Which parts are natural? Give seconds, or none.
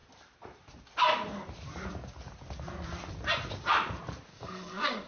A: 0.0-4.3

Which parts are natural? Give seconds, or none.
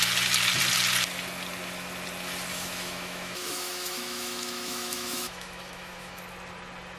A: 0.0-2.5; 6.2-7.0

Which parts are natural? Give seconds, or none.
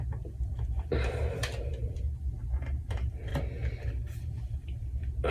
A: 3.3-4.2